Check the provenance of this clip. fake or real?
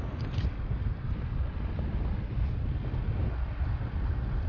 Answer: real